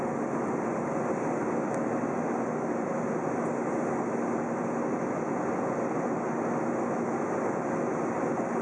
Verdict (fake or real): real